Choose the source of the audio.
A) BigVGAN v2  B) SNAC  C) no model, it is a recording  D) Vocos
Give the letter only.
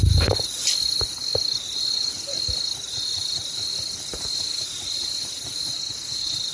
C